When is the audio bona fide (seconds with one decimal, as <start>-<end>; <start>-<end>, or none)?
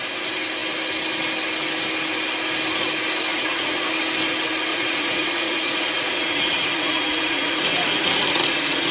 0.0-3.3; 3.9-4.7